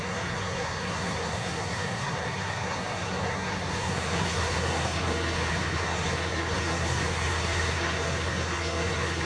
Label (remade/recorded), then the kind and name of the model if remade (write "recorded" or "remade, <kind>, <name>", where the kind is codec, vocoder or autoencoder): remade, codec, SNAC